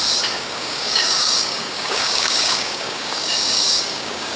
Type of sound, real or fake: fake